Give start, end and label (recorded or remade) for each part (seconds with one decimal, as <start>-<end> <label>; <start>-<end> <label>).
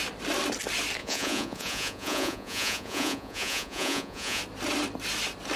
0.0-1.0 recorded; 1.0-4.4 remade; 4.4-5.6 recorded